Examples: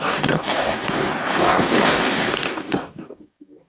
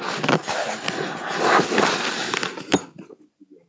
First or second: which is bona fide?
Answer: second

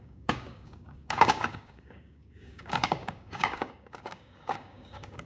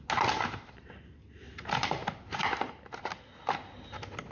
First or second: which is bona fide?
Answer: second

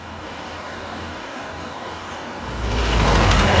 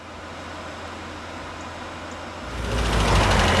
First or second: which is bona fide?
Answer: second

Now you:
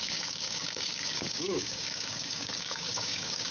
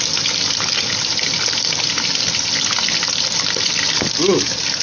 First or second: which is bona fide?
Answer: second